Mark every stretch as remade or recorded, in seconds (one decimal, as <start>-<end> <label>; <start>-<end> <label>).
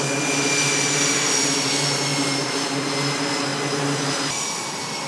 0.0-5.1 recorded